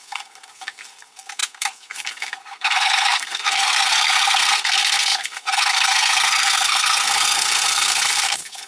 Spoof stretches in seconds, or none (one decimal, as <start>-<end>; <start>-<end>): 0.0-8.7